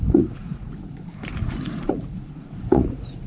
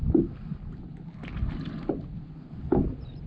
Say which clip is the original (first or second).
second